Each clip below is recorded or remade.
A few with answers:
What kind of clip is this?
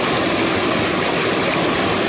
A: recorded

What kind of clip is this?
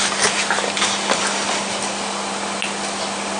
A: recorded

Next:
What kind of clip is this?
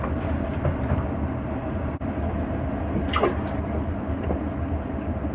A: recorded